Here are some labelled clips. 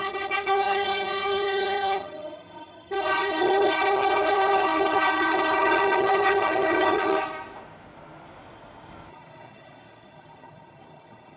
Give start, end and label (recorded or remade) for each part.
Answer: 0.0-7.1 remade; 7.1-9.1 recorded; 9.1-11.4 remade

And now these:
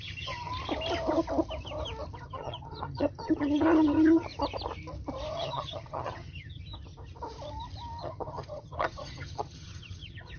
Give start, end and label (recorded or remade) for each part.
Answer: 0.0-0.5 remade; 0.5-2.2 recorded; 2.2-4.3 remade; 4.3-5.3 recorded; 5.3-6.7 remade; 6.7-8.0 recorded; 8.0-10.4 remade

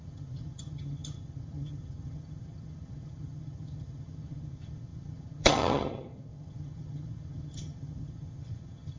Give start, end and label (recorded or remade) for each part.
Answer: 0.0-9.0 remade

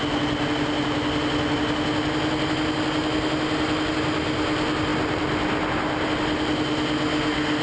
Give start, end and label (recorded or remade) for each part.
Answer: 0.0-7.6 recorded

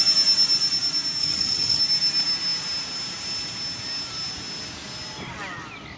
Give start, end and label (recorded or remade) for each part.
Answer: 0.0-1.2 recorded; 1.2-1.8 remade; 1.8-6.0 recorded

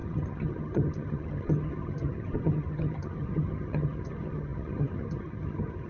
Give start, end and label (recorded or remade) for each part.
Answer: 0.0-5.9 remade

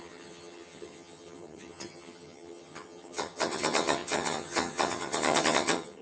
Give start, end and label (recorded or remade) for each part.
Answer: 0.0-6.0 remade